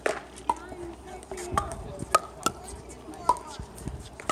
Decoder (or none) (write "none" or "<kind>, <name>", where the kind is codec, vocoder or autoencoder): none